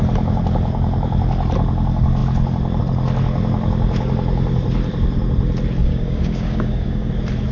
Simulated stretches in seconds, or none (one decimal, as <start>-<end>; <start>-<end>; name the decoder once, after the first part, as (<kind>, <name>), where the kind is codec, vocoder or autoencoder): 5.8-7.1 (codec, DAC)